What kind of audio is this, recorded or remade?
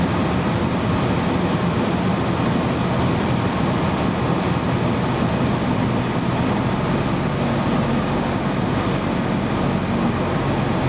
recorded